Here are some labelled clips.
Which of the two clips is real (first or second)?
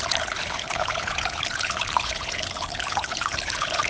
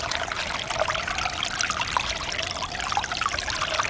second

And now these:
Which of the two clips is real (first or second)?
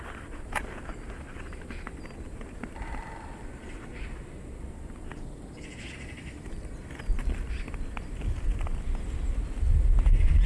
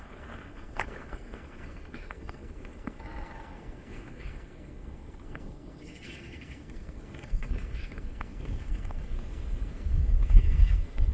first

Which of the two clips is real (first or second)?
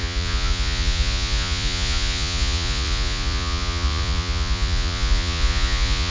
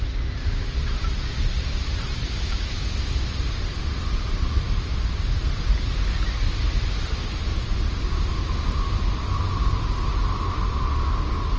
second